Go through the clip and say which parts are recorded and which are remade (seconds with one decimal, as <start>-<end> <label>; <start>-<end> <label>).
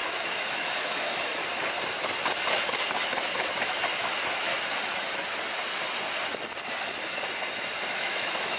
0.0-1.4 remade; 1.4-4.0 recorded; 4.0-4.5 remade; 4.5-7.9 recorded; 7.9-8.6 remade